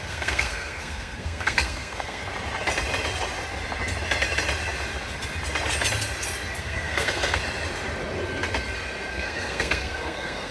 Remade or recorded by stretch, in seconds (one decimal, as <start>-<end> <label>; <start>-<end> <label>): 0.0-2.2 remade; 2.2-6.6 recorded; 6.6-7.4 remade; 7.4-9.1 recorded; 9.1-10.5 remade